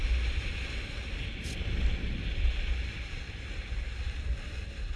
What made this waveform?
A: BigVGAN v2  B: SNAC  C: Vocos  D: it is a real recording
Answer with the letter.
D